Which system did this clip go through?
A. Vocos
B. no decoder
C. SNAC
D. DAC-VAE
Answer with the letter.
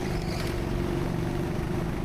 B